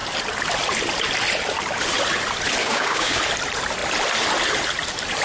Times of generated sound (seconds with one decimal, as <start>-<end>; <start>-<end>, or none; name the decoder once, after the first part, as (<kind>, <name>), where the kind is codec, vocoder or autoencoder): 2.6-3.2 (codec, DAC)